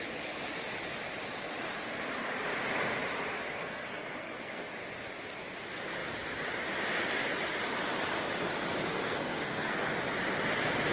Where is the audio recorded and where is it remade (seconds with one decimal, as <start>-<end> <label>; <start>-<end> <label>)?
0.0-3.6 recorded; 3.6-4.7 remade; 4.7-8.9 recorded; 8.9-9.9 remade; 9.9-10.9 recorded